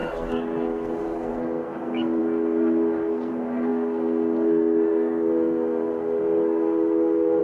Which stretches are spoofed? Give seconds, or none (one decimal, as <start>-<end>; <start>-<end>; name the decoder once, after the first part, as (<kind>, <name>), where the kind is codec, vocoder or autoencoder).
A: 0.0-7.4 (codec, SNAC)